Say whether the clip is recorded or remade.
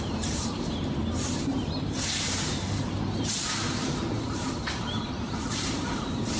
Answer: remade